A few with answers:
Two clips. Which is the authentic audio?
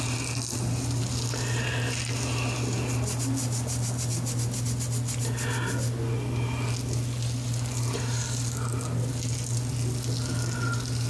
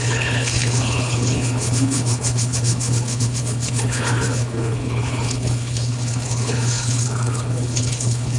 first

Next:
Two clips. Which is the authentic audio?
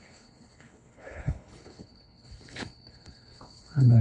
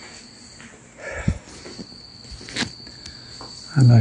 second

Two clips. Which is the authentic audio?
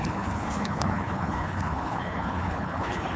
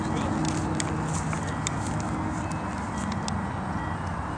second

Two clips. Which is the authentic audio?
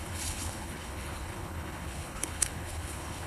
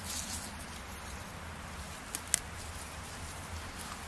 second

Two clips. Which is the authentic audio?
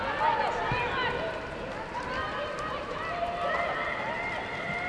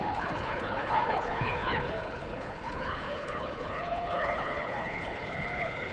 first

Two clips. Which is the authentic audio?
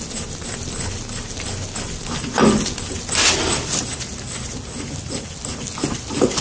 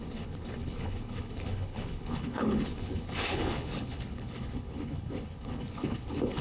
first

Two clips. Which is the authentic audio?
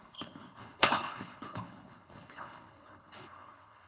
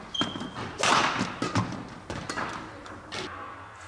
second